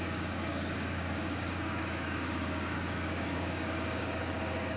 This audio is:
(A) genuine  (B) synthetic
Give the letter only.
B